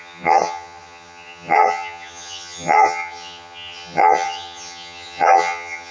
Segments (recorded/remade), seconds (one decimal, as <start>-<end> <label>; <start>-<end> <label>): 0.0-5.9 remade